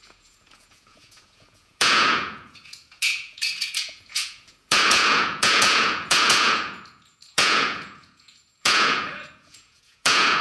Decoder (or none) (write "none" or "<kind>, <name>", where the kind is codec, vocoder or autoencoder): vocoder, Vocos